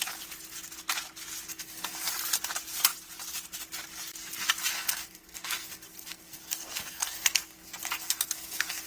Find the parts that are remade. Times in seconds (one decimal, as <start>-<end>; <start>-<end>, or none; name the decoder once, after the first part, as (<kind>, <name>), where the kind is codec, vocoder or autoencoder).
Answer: 1.5-2.1 (codec, SNAC); 4.7-8.9